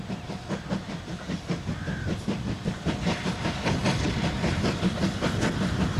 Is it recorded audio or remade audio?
recorded